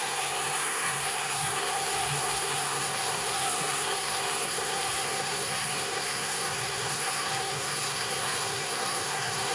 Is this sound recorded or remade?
remade